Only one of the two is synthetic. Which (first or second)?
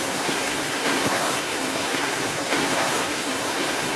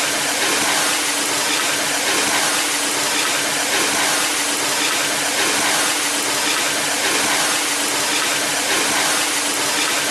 first